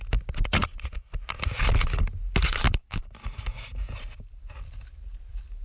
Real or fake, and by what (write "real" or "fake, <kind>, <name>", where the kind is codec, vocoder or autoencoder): real